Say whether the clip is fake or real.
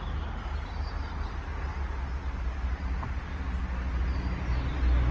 real